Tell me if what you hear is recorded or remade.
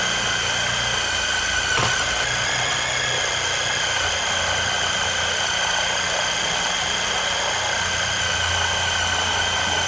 recorded